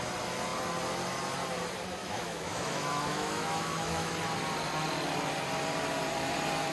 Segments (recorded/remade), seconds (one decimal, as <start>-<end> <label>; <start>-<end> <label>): 0.0-2.0 recorded; 2.0-4.1 remade; 4.1-6.7 recorded